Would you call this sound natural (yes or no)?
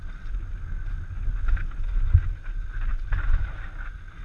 yes